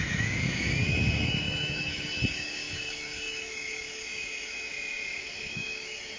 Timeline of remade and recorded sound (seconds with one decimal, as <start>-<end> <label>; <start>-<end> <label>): 0.0-6.2 remade